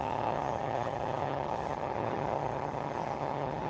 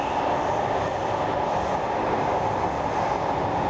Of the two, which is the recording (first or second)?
second